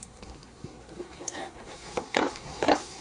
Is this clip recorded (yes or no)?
no